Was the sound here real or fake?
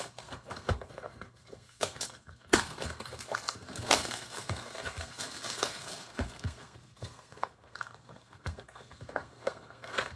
fake